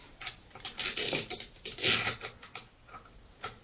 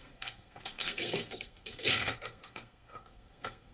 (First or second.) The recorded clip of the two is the first